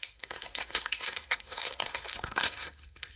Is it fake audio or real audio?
fake